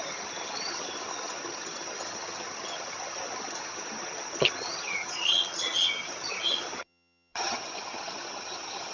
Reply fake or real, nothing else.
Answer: fake